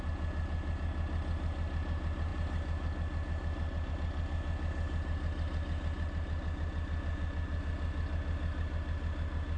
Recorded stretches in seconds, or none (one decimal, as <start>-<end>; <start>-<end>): 0.0-9.6